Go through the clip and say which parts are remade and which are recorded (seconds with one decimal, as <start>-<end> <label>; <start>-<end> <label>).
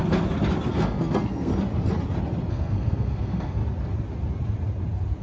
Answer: 0.0-0.7 recorded; 0.7-1.5 remade; 1.5-2.5 recorded; 2.5-3.6 remade; 3.6-5.2 recorded